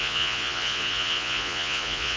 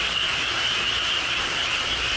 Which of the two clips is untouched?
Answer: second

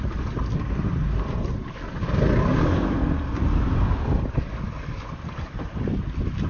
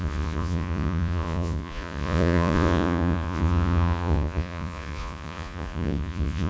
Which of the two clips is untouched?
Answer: first